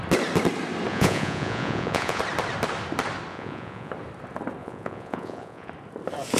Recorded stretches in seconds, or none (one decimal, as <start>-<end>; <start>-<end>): 0.0-0.9; 2.2-3.3; 3.9-4.6; 5.7-6.4